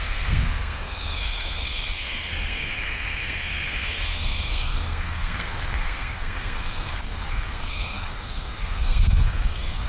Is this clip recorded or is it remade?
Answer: remade